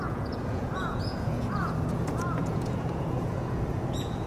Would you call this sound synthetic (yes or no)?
yes